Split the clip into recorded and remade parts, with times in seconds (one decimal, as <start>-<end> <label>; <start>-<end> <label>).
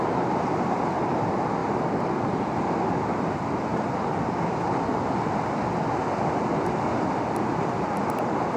0.0-8.6 recorded